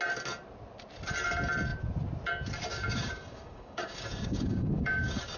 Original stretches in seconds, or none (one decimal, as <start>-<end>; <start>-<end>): 0.0-2.7